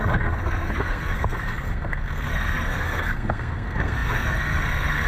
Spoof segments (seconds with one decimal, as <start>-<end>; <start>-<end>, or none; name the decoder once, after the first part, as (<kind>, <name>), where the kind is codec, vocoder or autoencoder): 0.0-5.1 (codec, SNAC)